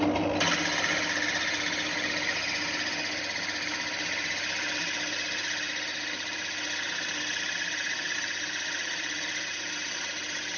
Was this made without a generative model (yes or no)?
yes